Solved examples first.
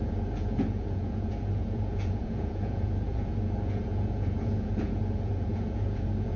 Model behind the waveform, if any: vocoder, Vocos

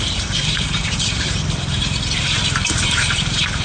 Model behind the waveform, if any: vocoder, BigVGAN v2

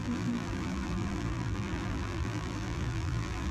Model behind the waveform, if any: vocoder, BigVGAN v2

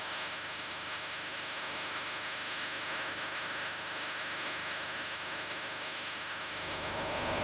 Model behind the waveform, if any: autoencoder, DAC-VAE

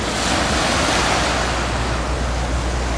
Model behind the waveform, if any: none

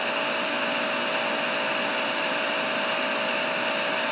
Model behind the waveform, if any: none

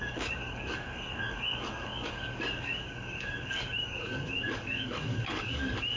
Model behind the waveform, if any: codec, DAC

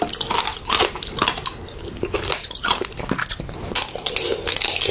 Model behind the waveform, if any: none